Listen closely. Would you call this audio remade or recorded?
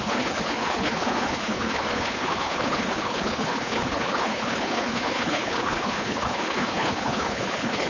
remade